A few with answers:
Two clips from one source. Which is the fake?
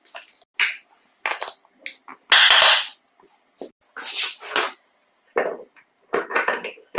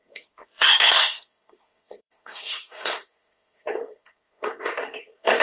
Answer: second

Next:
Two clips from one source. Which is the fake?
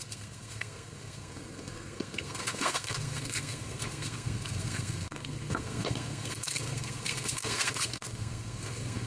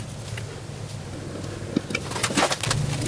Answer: first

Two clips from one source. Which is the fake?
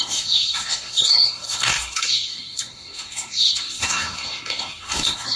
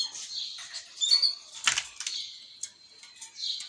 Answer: first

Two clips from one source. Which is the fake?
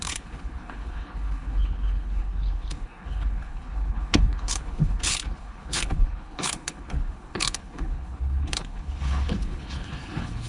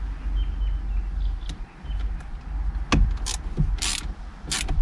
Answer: first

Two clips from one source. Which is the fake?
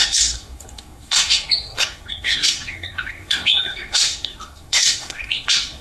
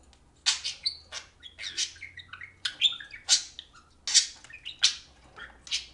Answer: first